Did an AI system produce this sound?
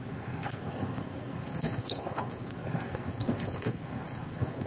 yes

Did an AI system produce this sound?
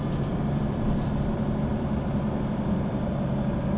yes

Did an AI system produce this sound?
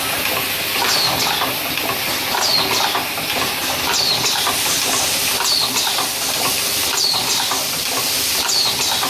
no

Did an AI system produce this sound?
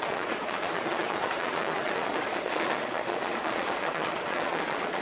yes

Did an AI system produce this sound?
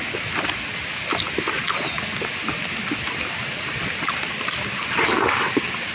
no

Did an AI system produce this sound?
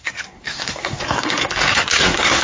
yes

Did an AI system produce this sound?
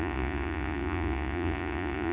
yes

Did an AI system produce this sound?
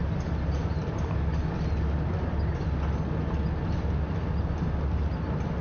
no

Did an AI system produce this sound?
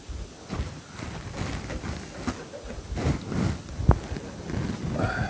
no